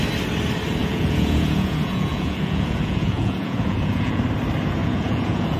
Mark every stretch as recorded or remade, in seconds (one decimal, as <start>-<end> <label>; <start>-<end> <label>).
0.0-0.8 recorded; 0.8-4.2 remade; 4.2-4.8 recorded; 4.8-5.6 remade